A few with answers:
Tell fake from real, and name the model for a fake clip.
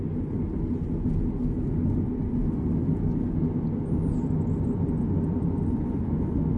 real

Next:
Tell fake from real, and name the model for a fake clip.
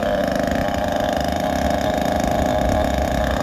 fake, vocoder, BigVGAN v2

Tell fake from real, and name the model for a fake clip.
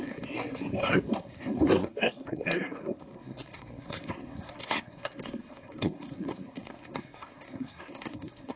fake, codec, SNAC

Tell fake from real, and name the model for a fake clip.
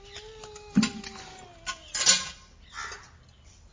real